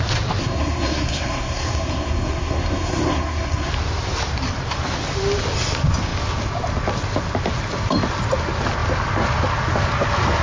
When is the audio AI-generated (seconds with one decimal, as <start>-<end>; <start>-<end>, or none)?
0.4-3.7